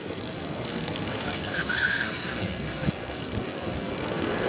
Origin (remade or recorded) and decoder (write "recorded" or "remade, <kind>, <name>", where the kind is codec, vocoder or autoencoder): remade, codec, SNAC